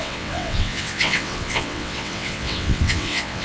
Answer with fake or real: fake